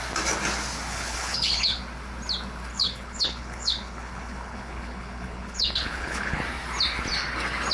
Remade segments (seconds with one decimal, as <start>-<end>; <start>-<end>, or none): 0.9-1.8; 2.7-6.4